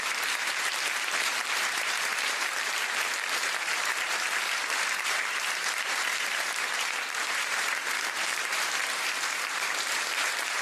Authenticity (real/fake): fake